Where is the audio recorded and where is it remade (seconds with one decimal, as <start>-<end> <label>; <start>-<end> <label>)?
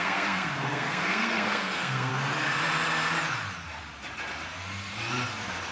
0.0-2.1 remade; 2.1-5.7 recorded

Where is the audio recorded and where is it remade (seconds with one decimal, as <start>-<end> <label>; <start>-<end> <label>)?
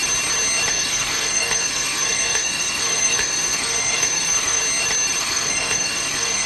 0.0-0.7 recorded; 0.7-4.6 remade; 4.6-5.2 recorded; 5.2-6.5 remade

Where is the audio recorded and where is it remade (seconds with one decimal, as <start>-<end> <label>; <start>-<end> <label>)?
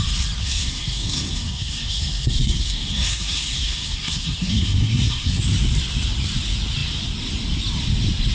0.0-0.4 recorded; 0.4-5.4 remade; 5.4-8.3 recorded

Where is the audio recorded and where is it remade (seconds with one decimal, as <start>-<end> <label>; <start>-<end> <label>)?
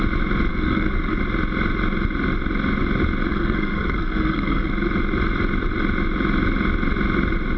0.0-0.5 recorded; 0.5-1.2 remade; 1.2-3.3 recorded; 3.3-4.7 remade; 4.7-7.6 recorded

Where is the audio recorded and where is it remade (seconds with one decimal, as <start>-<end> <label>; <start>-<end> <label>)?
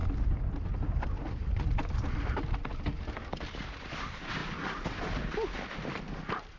0.0-6.6 recorded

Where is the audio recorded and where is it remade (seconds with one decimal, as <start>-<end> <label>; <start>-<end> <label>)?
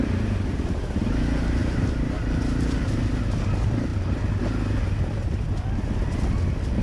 0.0-6.8 recorded